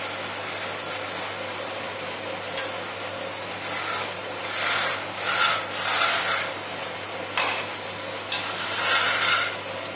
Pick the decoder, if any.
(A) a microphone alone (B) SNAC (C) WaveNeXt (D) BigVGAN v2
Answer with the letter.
A